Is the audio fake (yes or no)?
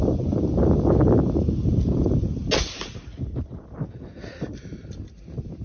no